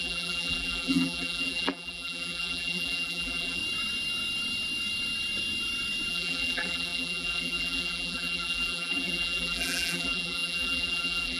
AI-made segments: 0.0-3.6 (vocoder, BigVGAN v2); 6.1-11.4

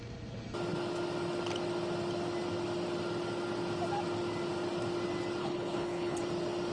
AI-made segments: 5.4-6.2 (codec, HILCodec)

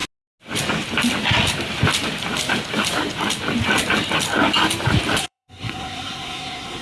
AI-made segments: 5.2-6.8 (codec, SNAC)